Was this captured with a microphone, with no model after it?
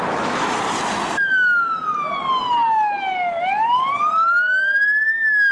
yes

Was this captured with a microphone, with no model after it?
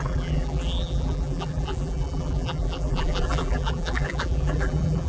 no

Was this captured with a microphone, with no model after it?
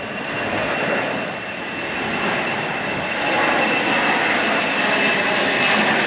yes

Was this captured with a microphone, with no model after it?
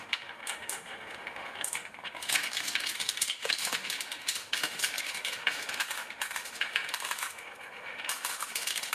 no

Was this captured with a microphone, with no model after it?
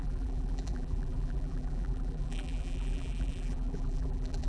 no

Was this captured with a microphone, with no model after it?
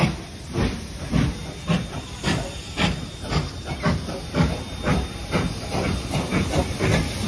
yes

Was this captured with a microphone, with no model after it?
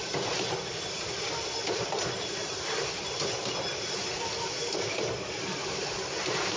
yes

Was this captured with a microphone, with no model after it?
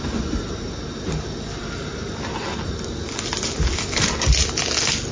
yes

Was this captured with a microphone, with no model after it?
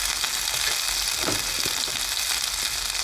yes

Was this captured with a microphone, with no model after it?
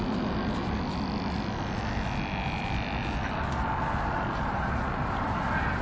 yes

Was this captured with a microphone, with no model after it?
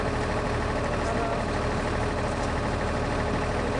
yes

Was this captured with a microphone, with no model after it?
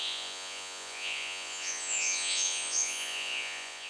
no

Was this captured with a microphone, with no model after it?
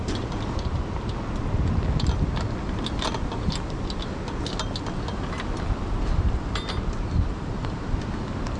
yes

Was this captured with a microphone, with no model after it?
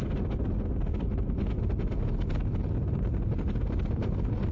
yes